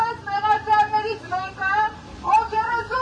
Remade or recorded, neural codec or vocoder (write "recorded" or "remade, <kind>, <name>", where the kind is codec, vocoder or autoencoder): remade, vocoder, BigVGAN v2